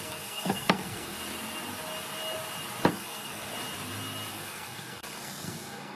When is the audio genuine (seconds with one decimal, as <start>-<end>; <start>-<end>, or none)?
1.2-2.9; 3.5-4.3